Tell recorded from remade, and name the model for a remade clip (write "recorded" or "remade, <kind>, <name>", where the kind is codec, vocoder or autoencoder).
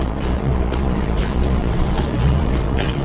remade, vocoder, Vocos